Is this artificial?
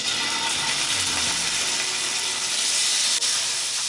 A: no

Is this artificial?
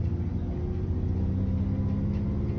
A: no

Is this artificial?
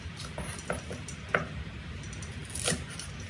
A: no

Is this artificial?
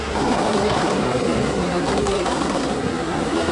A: yes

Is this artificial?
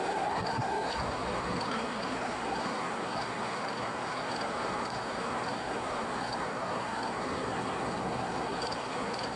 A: yes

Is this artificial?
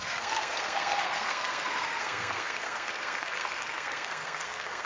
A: yes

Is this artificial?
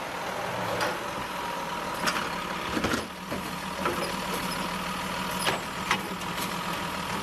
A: no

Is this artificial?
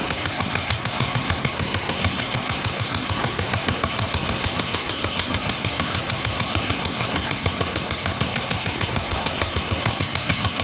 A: yes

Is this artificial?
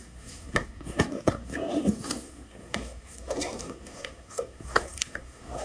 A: yes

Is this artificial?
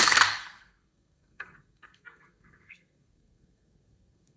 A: yes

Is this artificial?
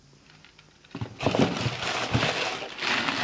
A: no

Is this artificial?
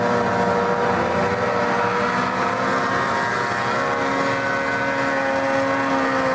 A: no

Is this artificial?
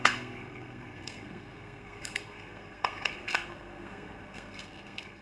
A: yes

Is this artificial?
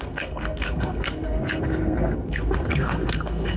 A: yes